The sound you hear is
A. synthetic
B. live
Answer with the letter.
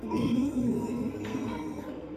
A